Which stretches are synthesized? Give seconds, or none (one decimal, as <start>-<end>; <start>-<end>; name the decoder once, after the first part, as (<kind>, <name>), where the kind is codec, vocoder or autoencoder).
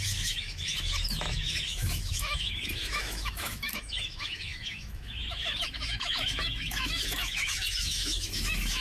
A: 0.0-8.8 (autoencoder, DAC-VAE)